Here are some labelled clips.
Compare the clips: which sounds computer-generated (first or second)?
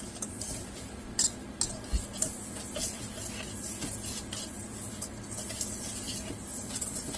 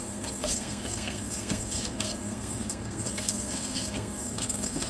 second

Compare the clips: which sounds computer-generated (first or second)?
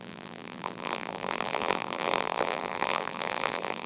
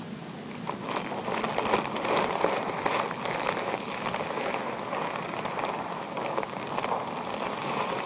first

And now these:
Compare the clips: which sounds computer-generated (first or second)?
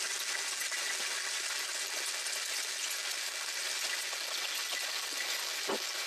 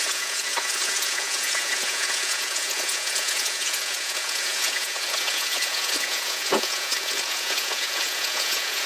second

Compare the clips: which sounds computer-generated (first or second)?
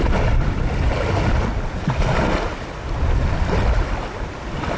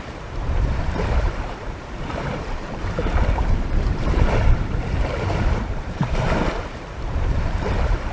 second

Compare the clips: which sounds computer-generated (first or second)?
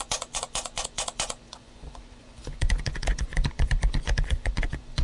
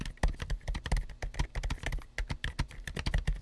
first